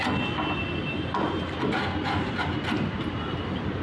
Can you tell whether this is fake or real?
real